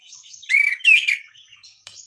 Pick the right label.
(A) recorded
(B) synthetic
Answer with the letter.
B